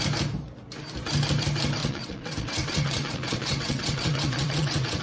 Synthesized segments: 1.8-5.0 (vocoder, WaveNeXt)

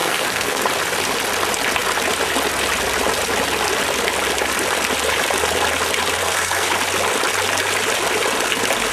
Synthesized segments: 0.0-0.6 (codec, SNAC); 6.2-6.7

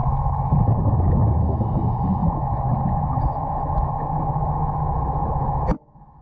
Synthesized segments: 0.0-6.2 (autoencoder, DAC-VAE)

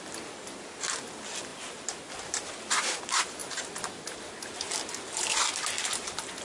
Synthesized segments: none